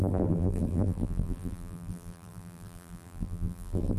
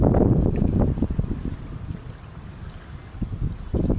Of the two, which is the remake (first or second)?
first